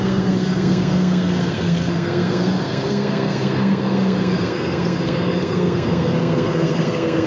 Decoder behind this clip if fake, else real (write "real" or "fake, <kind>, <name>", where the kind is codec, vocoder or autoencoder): fake, codec, SNAC